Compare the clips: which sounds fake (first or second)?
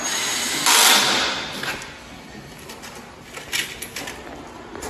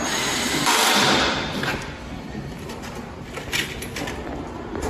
second